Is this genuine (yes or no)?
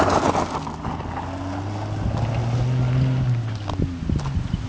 yes